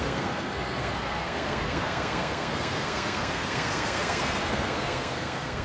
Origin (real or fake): fake